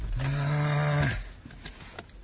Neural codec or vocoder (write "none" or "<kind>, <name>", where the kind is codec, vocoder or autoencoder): none